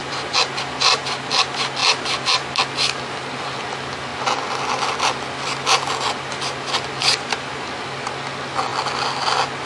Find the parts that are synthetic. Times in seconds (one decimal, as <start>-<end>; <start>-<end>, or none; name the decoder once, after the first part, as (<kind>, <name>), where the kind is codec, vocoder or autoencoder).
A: none